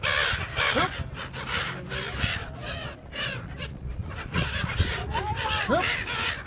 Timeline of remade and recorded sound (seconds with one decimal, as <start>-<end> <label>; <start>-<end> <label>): 0.0-2.4 recorded; 2.4-5.2 remade; 5.2-6.5 recorded